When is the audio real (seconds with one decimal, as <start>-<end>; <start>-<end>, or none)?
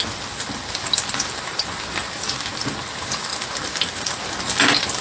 0.0-5.0